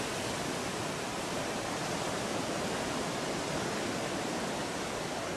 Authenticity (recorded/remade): recorded